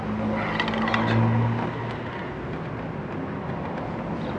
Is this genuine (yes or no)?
yes